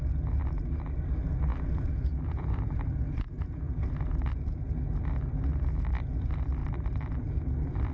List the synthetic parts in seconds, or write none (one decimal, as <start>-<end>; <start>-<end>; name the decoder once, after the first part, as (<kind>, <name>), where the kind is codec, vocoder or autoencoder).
1.5-3.9 (vocoder, Vocos)